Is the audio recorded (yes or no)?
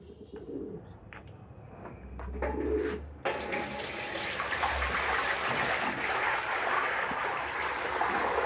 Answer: yes